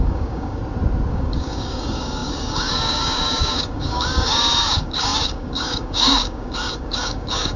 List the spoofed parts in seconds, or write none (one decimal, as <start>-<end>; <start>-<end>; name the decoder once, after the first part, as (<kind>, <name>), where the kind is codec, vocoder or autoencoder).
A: 0.0-0.6 (codec, DAC); 1.1-7.6